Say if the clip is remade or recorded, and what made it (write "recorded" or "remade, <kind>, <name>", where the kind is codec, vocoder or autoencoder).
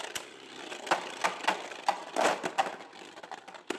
recorded